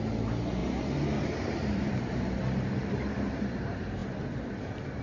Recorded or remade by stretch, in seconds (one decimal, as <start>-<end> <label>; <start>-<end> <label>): 0.0-0.6 recorded; 0.6-3.4 remade; 3.4-5.0 recorded